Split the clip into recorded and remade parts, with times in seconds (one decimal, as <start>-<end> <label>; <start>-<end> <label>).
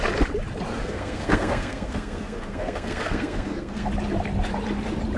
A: 0.0-0.8 recorded; 0.8-3.9 remade; 3.9-5.2 recorded